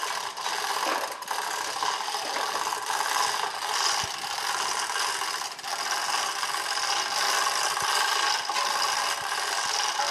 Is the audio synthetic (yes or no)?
no